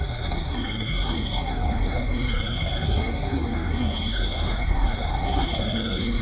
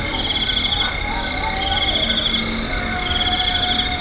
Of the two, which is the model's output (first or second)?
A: first